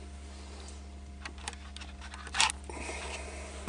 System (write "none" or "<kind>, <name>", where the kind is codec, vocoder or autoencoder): none